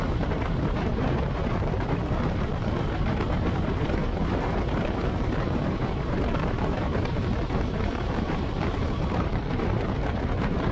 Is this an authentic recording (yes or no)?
no